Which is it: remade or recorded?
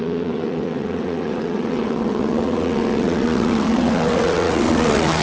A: remade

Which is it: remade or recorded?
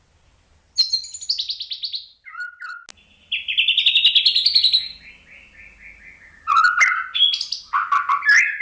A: recorded